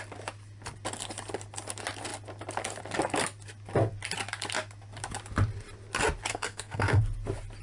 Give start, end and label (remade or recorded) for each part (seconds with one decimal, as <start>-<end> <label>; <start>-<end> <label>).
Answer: 0.0-6.3 recorded; 6.3-7.0 remade; 7.0-7.6 recorded